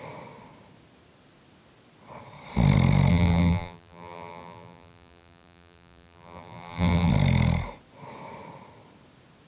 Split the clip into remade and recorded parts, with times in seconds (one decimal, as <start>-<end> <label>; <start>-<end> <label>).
0.0-3.1 recorded; 3.1-7.1 remade; 7.1-9.5 recorded